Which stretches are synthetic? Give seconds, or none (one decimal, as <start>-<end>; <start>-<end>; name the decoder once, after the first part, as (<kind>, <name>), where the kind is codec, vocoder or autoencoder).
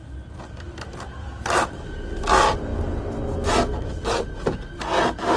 none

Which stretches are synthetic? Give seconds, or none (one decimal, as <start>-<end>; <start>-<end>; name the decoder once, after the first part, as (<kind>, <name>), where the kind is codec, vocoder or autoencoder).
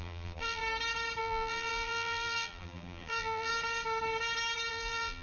0.0-0.6 (vocoder, BigVGAN v2); 1.2-3.5; 4.7-5.2